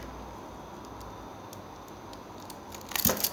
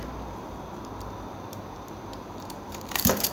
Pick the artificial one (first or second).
second